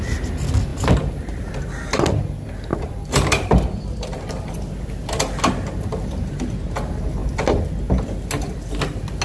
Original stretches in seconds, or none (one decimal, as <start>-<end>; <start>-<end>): 0.0-2.7; 6.3-9.2